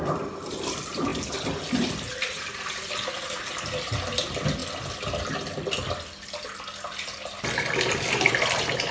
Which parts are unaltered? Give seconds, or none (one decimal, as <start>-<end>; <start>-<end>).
0.0-8.9